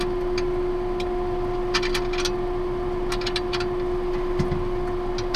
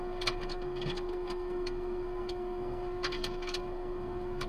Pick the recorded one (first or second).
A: first